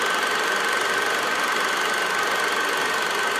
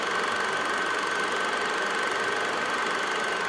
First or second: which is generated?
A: first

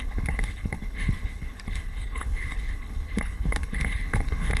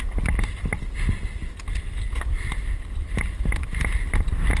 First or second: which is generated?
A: first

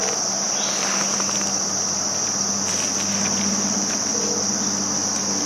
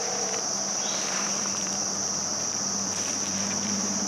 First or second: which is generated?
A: second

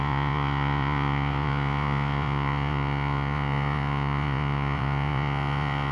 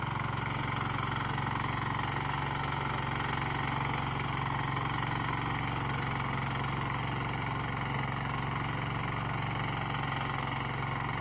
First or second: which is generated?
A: first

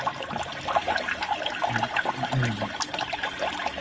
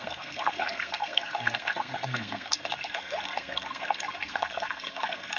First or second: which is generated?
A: second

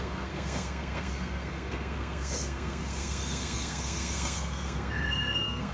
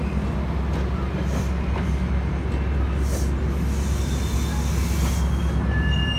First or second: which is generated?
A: first